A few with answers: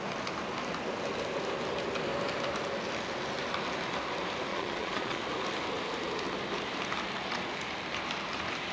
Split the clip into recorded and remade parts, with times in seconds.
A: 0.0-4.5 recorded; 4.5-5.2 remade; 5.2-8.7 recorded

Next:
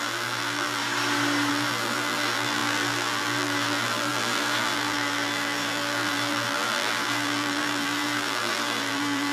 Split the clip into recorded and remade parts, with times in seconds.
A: 0.0-0.8 remade; 0.8-1.5 recorded; 1.5-9.3 remade